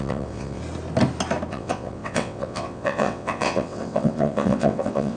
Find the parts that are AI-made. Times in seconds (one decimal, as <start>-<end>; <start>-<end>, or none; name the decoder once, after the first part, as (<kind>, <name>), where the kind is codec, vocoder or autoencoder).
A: 0.0-0.6 (vocoder, WaveNeXt); 1.5-5.2